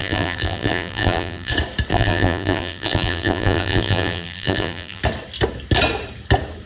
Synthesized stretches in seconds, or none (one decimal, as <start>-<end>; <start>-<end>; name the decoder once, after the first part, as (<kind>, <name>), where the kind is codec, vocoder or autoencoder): 0.0-1.5 (vocoder, BigVGAN v2); 1.9-5.0